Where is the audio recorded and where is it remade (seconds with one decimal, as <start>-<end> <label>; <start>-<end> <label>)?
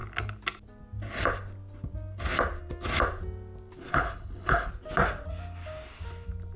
0.0-3.9 recorded; 3.9-4.7 remade; 4.7-6.6 recorded